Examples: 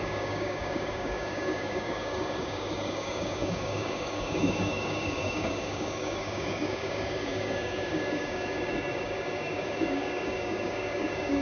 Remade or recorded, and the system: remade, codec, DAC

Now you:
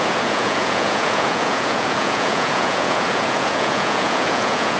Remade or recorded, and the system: remade, vocoder, Vocos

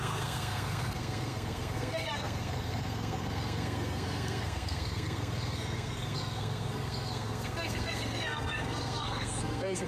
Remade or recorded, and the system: remade, codec, SNAC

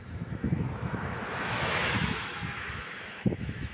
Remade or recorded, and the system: remade, autoencoder, DAC-VAE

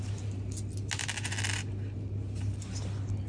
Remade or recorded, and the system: recorded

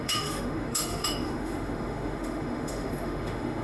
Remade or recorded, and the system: remade, autoencoder, DAC-VAE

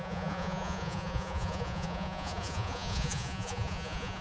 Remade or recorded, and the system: remade, vocoder, Vocos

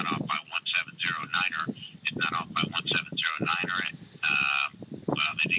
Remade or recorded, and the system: recorded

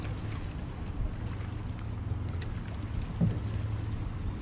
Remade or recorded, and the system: recorded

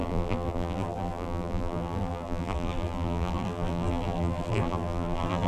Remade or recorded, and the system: remade, vocoder, BigVGAN v2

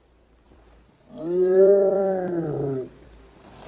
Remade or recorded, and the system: remade, vocoder, BigVGAN v2